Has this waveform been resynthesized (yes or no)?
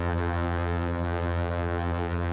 yes